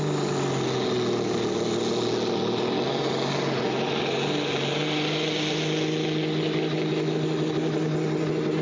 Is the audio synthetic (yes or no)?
no